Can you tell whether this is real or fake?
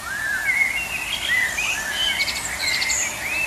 real